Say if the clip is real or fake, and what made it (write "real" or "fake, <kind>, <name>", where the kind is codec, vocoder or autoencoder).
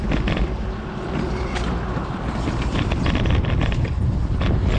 fake, vocoder, BigVGAN v2